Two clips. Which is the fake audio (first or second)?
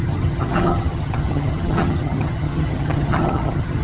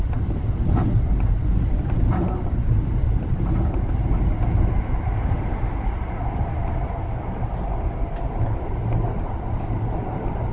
first